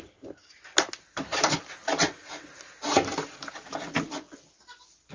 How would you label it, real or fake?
real